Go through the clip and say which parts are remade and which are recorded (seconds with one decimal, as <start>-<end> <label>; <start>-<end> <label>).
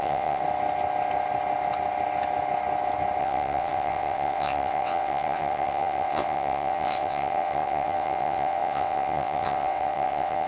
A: 0.0-0.4 remade; 0.4-3.2 recorded; 3.2-10.5 remade